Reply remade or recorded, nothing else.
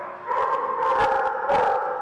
recorded